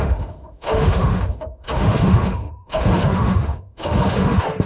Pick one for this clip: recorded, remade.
remade